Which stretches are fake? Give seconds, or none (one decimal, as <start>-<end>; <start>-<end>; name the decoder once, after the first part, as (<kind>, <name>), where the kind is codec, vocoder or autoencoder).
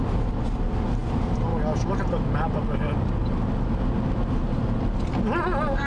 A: none